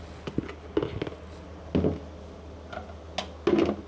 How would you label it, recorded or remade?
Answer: recorded